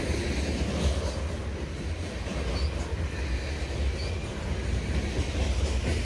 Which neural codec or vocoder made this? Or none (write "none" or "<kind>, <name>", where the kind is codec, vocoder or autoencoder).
none